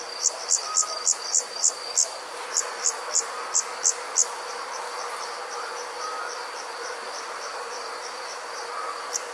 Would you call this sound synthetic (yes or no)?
no